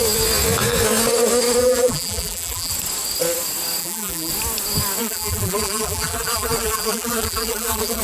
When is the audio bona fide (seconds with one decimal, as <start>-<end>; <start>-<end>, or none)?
0.0-1.6; 2.7-3.8; 4.3-5.0